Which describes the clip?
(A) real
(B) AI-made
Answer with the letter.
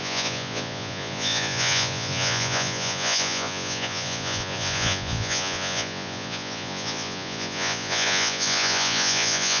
B